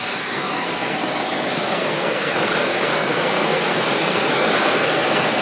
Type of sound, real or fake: fake